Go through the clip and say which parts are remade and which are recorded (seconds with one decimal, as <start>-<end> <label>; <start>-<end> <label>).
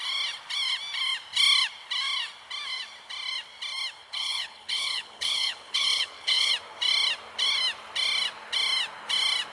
0.0-4.0 recorded; 4.0-6.5 remade; 6.5-9.5 recorded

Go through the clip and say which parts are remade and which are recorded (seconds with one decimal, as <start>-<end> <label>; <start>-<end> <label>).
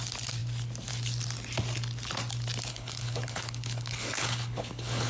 0.0-2.7 recorded; 2.7-5.1 remade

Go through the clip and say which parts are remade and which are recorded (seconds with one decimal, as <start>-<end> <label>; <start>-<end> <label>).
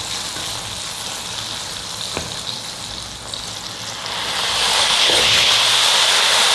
0.0-5.0 recorded; 5.0-5.5 remade; 5.5-6.5 recorded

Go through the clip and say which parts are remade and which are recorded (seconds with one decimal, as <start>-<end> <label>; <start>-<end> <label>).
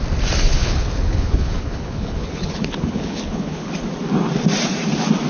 0.0-0.5 recorded; 0.5-3.7 remade; 3.7-5.3 recorded